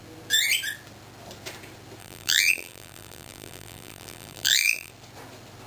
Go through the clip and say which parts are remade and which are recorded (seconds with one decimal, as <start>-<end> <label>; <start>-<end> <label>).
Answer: 0.0-2.0 recorded; 2.0-4.9 remade; 4.9-5.7 recorded